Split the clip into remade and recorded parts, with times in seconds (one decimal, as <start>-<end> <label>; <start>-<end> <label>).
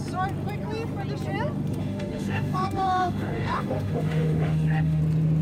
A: 0.0-1.8 recorded; 1.8-5.0 remade; 5.0-5.4 recorded